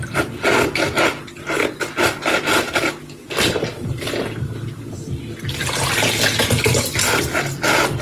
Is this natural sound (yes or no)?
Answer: yes